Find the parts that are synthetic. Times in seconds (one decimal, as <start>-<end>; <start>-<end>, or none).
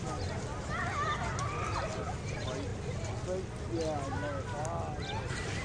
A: none